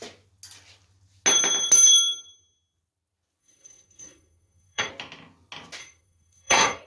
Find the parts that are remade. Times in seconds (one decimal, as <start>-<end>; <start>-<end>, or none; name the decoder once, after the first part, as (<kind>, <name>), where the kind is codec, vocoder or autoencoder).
3.4-4.9 (codec, SNAC); 5.8-6.9